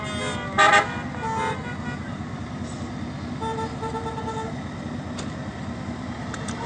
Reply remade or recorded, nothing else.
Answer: recorded